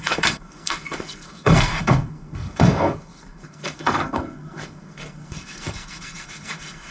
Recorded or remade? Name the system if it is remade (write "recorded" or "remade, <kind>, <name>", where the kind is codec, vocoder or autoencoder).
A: remade, codec, SNAC